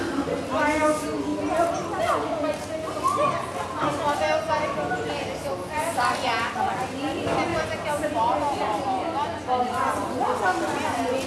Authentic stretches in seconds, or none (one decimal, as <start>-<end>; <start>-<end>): 0.0-11.3